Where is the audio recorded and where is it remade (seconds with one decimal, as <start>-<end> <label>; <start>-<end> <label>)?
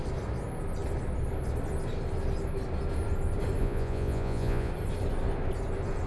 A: 0.0-3.6 recorded; 3.6-4.7 remade; 4.7-6.1 recorded